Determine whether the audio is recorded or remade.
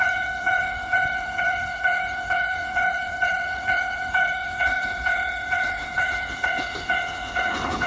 remade